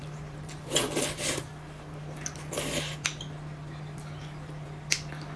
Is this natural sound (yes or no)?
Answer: yes